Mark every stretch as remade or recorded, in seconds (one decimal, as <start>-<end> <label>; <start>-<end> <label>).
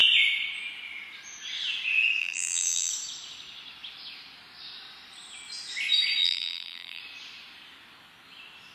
0.0-2.2 recorded; 2.2-2.9 remade; 2.9-6.2 recorded; 6.2-7.0 remade; 7.0-8.7 recorded